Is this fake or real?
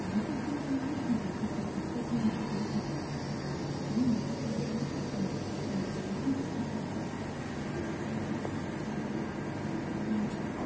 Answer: real